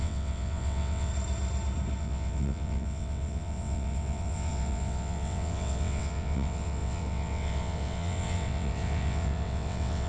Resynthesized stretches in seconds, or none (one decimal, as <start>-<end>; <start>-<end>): 0.0-1.1; 2.0-10.1